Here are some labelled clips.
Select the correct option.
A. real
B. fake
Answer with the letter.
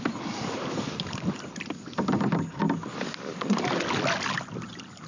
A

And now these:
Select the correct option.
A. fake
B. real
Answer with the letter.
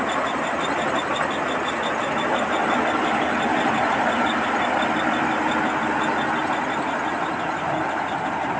B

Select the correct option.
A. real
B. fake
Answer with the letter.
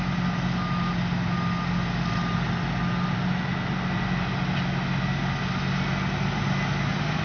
A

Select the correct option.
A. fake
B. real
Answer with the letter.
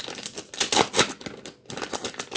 B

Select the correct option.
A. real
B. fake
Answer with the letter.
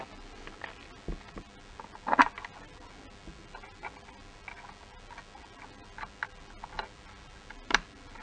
A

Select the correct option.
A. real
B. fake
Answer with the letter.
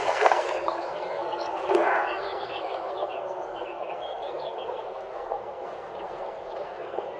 B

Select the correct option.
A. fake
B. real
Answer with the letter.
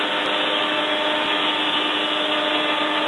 B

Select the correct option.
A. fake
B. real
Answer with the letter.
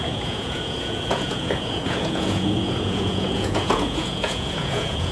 A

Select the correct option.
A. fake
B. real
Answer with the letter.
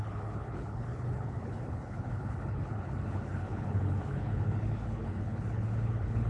A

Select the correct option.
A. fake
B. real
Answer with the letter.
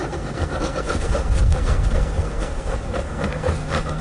A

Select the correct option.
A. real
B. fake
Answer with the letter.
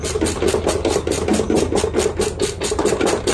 A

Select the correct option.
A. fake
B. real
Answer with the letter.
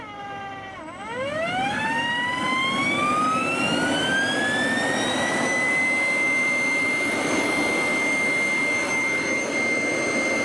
B